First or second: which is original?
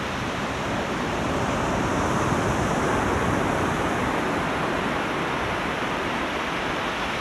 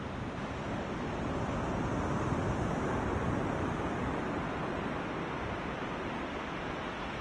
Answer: second